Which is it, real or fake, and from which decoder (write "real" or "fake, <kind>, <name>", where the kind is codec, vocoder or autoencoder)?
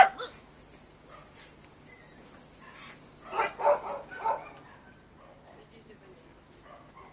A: real